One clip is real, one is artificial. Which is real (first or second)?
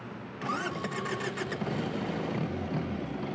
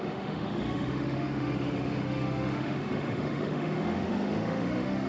first